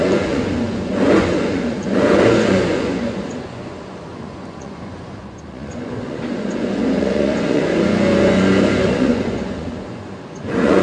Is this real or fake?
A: fake